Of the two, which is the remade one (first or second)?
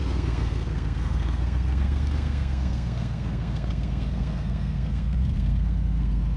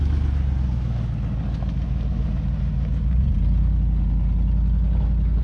first